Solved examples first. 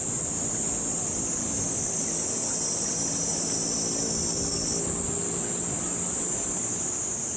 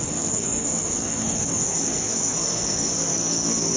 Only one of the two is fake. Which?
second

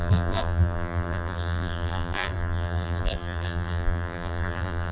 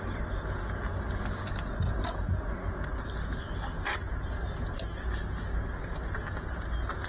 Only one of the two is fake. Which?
first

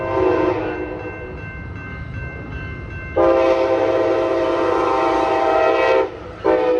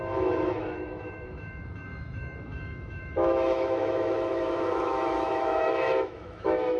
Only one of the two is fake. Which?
second